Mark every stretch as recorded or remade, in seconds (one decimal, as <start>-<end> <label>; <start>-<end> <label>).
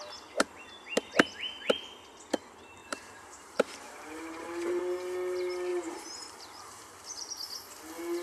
0.0-2.8 recorded; 2.8-4.8 remade; 4.8-5.7 recorded; 5.7-7.3 remade; 7.3-8.2 recorded